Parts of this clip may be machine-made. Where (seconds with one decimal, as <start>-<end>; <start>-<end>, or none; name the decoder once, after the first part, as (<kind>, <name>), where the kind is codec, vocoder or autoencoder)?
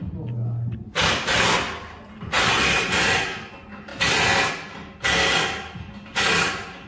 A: none